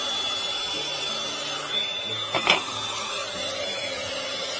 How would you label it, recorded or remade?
recorded